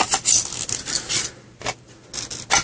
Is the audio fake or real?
real